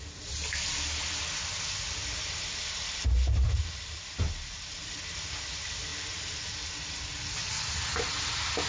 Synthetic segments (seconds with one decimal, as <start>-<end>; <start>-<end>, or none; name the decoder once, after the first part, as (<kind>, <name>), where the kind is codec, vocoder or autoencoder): none